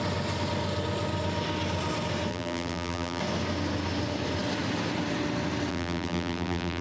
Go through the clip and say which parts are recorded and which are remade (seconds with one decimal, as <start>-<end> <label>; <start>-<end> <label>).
0.0-2.3 recorded; 2.3-3.2 remade; 3.2-5.7 recorded; 5.7-6.8 remade